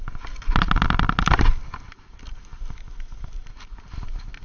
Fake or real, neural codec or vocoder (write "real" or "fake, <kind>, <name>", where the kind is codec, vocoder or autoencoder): real